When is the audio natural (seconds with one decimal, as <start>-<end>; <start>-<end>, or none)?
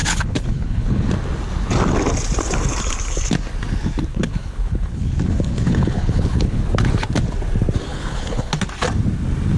1.1-4.1; 6.6-7.9; 8.5-9.6